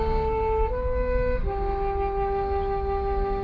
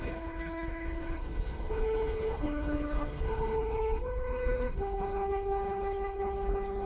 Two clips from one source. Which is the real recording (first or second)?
first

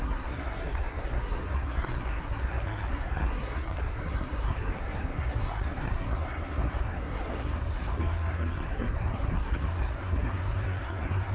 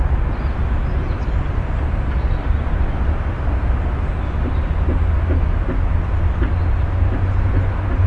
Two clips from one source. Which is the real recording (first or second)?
second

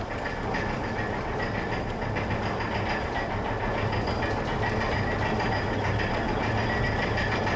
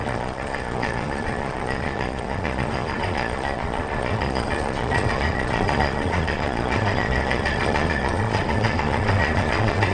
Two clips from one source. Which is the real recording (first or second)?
first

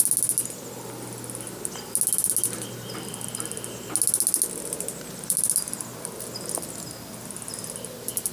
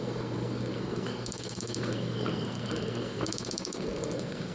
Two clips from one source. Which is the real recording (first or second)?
first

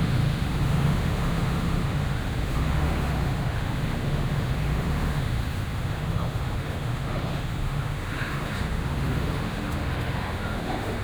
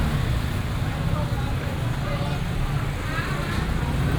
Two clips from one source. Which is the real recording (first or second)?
second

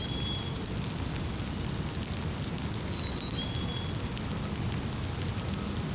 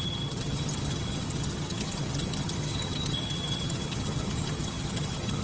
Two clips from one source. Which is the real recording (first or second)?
first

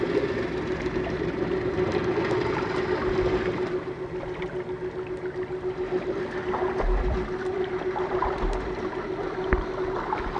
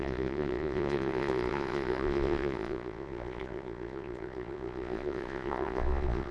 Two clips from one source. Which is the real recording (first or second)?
first